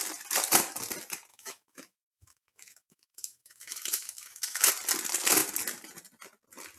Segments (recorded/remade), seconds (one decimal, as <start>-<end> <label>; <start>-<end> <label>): 0.0-1.3 recorded; 1.3-4.7 remade; 4.7-6.8 recorded